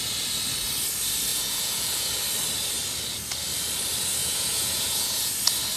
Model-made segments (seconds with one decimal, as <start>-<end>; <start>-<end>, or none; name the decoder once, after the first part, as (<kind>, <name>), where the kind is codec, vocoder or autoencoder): 1.3-2.1 (vocoder, Vocos); 4.2-5.3